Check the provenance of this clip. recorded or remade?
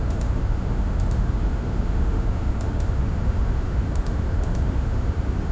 remade